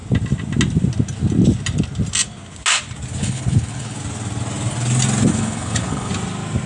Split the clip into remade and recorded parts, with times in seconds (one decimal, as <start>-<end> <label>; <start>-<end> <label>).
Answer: 0.0-3.2 recorded; 3.2-4.0 remade; 4.0-5.3 recorded; 5.3-6.1 remade; 6.1-6.7 recorded